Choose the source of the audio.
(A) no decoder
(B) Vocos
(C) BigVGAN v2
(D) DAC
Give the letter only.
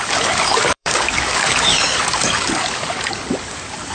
D